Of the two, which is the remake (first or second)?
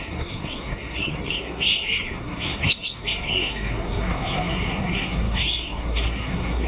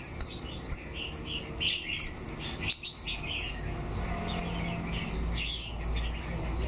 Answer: first